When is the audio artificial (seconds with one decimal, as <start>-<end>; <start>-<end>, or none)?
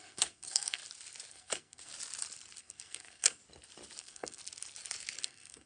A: 0.0-0.8; 1.3-1.9; 2.6-3.4; 4.0-4.4; 5.2-5.7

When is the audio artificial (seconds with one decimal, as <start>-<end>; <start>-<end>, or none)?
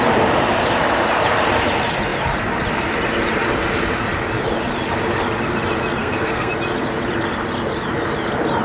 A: 6.0-6.5